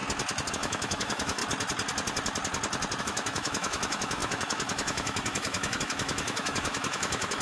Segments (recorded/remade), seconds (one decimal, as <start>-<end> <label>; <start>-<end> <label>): 0.0-0.5 recorded; 0.5-1.4 remade; 1.4-3.0 recorded; 3.0-7.4 remade